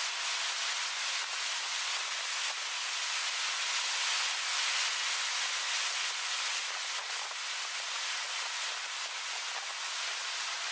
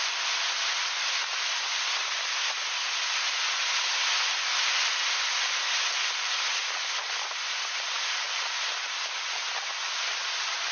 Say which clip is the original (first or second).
first